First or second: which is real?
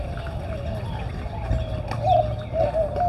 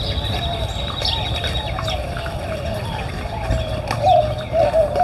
first